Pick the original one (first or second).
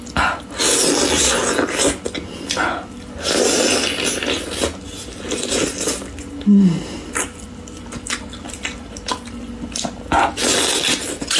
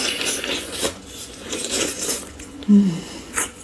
first